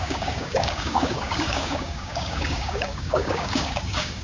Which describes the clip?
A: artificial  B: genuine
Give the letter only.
A